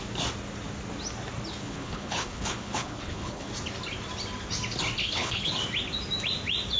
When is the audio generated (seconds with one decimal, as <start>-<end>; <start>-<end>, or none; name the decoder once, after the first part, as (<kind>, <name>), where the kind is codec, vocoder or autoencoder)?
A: 1.5-3.5 (codec, HILCodec); 5.0-5.5